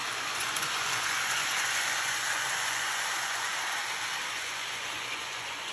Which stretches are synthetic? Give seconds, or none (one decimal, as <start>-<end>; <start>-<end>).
0.0-3.8; 4.3-5.7